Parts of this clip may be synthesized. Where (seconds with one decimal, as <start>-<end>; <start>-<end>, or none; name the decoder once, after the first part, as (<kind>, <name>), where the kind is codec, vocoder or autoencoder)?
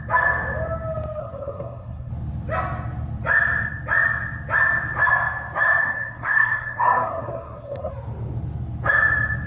1.2-2.1 (codec, SNAC); 5.8-7.9